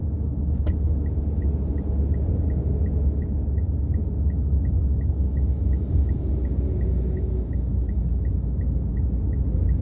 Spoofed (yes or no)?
no